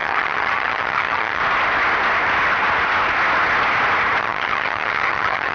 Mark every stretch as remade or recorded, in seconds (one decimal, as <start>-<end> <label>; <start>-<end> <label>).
0.0-1.4 remade; 1.4-4.2 recorded; 4.2-5.5 remade